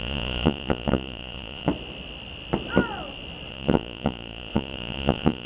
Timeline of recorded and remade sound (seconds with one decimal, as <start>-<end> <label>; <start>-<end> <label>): 0.0-1.7 remade; 1.7-3.5 recorded; 3.5-5.5 remade